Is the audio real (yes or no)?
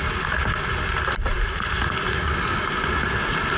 yes